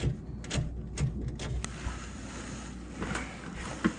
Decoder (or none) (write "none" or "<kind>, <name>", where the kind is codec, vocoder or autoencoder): none